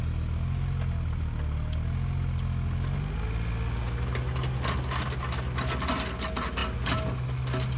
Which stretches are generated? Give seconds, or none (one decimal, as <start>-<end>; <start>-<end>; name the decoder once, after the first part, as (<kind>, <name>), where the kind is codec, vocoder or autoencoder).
none